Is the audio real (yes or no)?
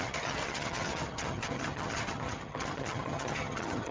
no